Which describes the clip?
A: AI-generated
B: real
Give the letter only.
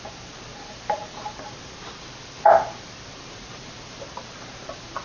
A